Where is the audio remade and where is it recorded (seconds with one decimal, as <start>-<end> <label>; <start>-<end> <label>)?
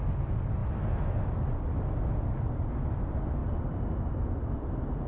0.0-5.1 recorded